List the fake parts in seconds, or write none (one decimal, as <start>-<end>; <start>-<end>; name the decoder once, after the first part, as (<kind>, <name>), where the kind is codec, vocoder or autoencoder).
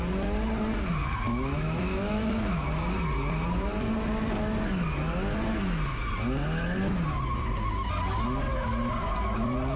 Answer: 1.0-2.7 (autoencoder, DAC-VAE)